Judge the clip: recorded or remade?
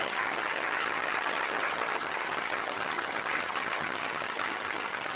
remade